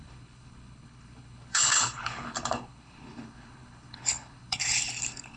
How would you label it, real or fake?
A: fake